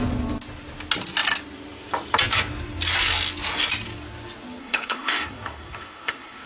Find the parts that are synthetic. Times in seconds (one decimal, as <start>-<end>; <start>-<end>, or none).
4.6-6.5